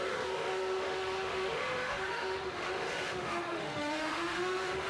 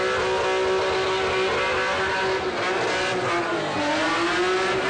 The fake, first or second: first